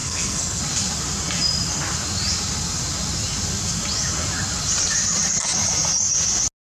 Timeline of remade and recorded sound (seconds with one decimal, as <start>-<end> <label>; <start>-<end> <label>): 0.0-0.6 remade; 0.6-6.8 recorded